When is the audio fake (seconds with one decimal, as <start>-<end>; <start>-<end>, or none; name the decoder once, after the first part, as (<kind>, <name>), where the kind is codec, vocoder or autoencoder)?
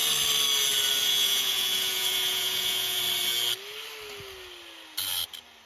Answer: 1.0-3.0 (vocoder, Vocos)